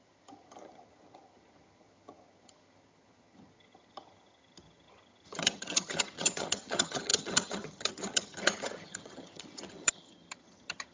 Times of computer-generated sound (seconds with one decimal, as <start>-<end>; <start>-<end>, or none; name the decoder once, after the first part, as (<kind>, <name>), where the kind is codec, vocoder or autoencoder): 0.0-10.9 (vocoder, HiFi-GAN)